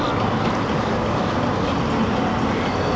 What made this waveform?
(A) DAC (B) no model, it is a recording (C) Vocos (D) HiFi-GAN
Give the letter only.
B